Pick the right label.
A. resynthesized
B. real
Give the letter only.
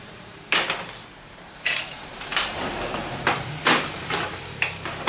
A